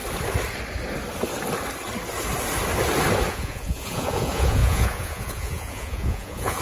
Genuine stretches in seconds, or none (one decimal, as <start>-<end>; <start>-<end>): 0.0-3.3